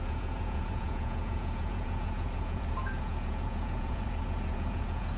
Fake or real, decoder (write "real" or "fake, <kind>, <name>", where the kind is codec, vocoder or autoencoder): fake, vocoder, Vocos